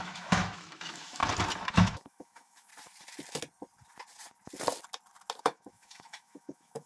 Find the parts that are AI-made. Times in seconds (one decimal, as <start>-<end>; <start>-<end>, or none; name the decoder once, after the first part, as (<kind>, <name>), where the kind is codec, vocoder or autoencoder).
0.0-1.2 (autoencoder, DAC-VAE); 1.7-2.7; 5.4-6.9

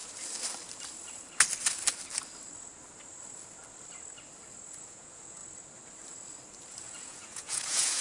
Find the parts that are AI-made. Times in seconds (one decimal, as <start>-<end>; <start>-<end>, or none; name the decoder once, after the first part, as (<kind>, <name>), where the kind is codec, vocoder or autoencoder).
4.8-5.4 (vocoder, Vocos); 6.7-8.0

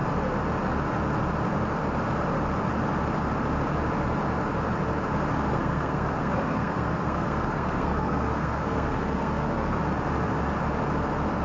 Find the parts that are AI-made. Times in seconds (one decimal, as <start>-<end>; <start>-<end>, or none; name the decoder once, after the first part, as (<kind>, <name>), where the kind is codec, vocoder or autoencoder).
5.5-9.8 (codec, SNAC)

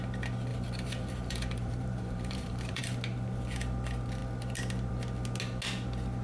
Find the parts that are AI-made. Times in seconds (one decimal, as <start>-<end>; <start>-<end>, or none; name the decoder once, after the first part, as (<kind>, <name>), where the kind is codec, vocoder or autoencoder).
0.5-2.8 (vocoder, BigVGAN v2)

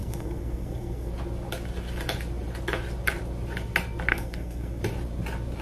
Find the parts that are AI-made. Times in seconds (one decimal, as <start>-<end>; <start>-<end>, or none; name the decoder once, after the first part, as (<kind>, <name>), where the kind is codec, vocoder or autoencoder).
0.0-1.1 (codec, SNAC); 4.1-4.8

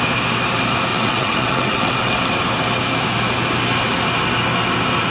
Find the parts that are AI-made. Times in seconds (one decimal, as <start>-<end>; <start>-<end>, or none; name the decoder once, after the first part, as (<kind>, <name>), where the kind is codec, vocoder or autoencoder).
0.9-2.1 (vocoder, WaveNeXt)

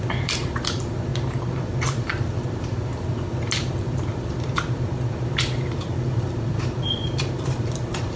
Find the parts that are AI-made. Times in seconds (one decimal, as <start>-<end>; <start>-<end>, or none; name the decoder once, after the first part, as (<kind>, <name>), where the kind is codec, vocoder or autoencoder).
0.0-1.1 (vocoder, BigVGAN v2); 1.7-2.9; 3.8-8.2

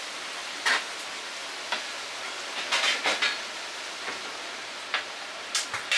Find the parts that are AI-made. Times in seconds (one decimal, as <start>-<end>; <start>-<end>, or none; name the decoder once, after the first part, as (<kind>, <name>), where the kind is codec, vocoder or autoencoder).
none